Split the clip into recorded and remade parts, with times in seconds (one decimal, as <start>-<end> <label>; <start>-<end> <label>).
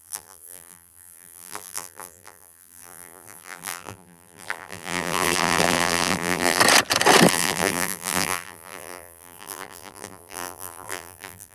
0.0-6.6 remade; 6.6-7.3 recorded; 7.3-11.5 remade